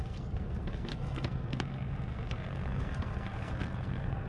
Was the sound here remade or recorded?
remade